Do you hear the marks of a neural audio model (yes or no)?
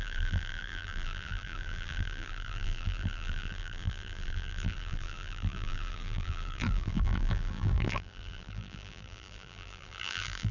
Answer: yes